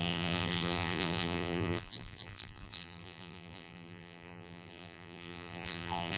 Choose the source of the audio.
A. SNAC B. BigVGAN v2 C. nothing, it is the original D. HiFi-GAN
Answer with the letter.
B